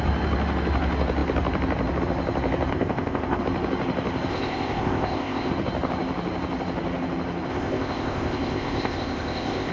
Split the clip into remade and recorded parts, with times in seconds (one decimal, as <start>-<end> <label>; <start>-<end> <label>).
0.0-2.7 recorded; 2.7-3.4 remade; 3.4-4.3 recorded; 4.3-5.5 remade; 5.5-7.5 recorded; 7.5-9.7 remade